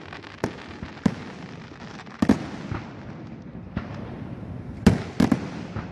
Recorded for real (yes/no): yes